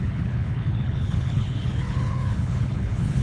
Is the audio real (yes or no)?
no